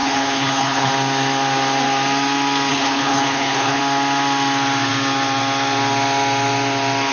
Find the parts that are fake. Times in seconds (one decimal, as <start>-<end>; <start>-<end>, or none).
0.0-0.9; 2.7-3.8